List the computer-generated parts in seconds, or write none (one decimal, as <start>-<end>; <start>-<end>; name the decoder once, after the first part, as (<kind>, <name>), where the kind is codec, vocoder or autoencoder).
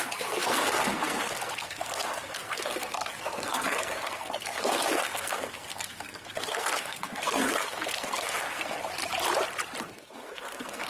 0.0-8.8 (codec, SNAC); 9.8-10.9